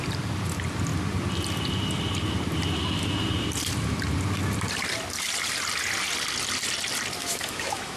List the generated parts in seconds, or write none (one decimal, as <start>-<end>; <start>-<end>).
7.2-8.0